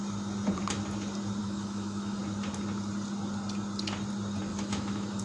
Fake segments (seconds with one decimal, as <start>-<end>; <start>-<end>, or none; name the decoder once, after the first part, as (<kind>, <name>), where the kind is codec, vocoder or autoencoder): 1.4-2.2 (autoencoder, DAC-VAE); 4.5-5.2